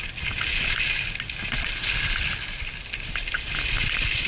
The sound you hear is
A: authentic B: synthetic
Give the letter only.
A